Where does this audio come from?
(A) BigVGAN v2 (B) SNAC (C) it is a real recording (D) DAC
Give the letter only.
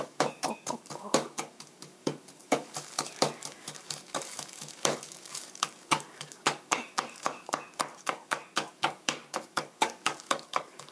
D